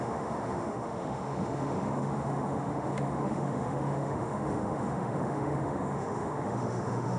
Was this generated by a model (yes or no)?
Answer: yes